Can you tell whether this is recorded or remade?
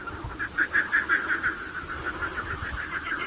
recorded